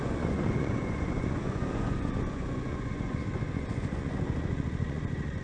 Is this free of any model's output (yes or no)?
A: no